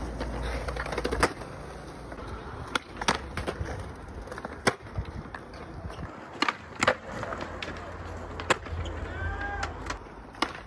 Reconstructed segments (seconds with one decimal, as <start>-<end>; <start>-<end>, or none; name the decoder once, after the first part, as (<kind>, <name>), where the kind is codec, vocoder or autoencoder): none